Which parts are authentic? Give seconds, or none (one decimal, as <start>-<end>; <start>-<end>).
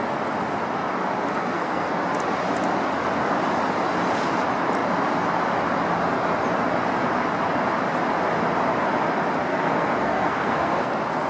0.0-1.3; 1.9-9.5; 10.9-11.3